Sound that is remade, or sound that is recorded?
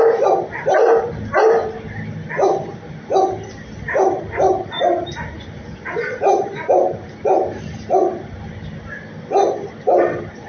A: recorded